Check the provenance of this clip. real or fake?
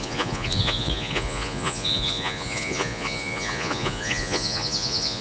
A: fake